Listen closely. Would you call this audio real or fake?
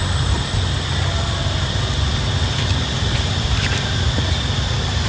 real